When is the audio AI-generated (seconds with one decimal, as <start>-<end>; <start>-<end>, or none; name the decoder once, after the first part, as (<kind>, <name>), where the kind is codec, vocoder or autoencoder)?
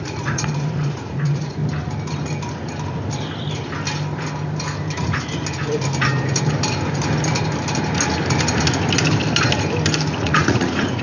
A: 0.0-1.6 (vocoder, Vocos); 5.0-5.4; 10.2-11.0